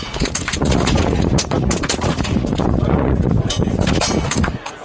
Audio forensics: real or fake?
fake